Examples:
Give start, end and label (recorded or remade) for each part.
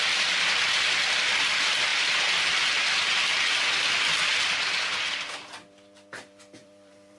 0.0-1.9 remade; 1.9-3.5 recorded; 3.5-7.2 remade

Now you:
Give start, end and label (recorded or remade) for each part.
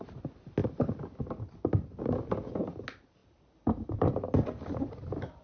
0.0-3.2 recorded; 3.2-4.1 remade; 4.1-5.4 recorded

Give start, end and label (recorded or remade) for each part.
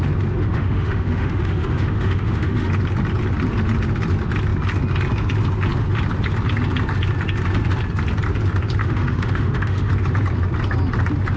0.0-0.4 recorded; 0.4-2.7 remade; 2.7-8.8 recorded; 8.8-9.9 remade; 9.9-11.4 recorded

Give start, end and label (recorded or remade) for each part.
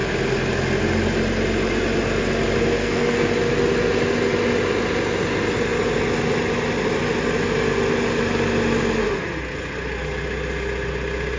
0.0-2.8 recorded; 2.8-3.3 remade; 3.3-11.4 recorded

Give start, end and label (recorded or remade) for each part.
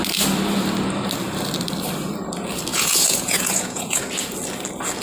0.0-2.7 recorded; 2.7-4.0 remade; 4.0-5.0 recorded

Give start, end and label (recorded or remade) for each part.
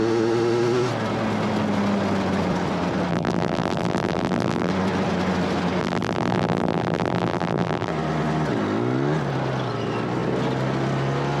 0.0-3.1 recorded; 3.1-4.7 remade; 4.7-5.8 recorded; 5.8-7.9 remade; 7.9-11.4 recorded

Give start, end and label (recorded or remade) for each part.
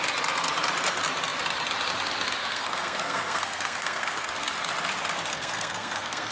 0.0-2.4 recorded; 2.4-4.3 remade; 4.3-5.3 recorded; 5.3-6.3 remade